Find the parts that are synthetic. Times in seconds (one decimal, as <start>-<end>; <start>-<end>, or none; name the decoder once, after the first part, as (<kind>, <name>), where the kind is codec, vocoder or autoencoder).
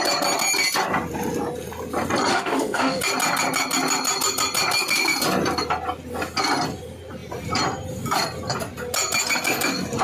2.3-3.0 (autoencoder, DAC-VAE)